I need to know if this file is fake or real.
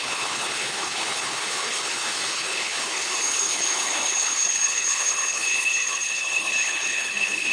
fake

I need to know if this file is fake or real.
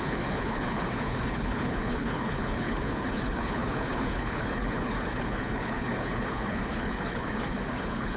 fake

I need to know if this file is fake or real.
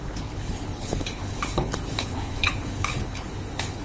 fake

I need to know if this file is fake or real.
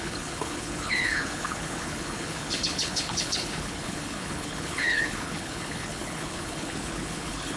fake